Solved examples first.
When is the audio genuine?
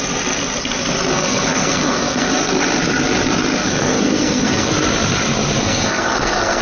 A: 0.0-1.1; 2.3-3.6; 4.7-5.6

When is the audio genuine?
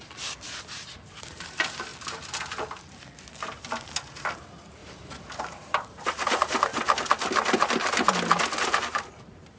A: 1.9-4.3; 4.8-5.4; 6.7-8.6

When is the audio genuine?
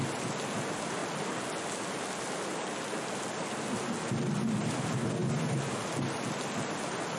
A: 0.0-7.2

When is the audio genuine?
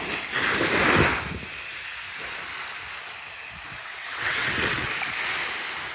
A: 0.0-3.9; 4.9-5.9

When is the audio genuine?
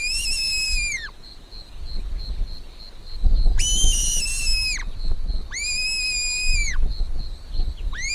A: 0.0-8.1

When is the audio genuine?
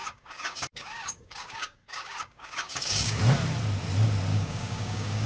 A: 3.2-4.3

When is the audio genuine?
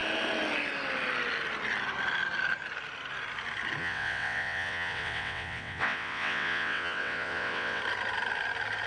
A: 0.0-3.8; 7.8-8.9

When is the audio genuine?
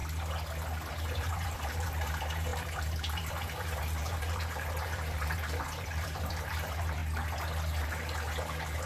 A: 0.0-0.9; 7.0-7.8